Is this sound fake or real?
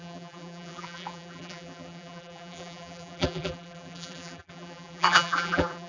fake